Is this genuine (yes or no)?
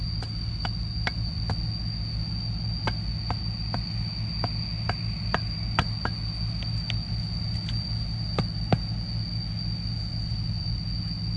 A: yes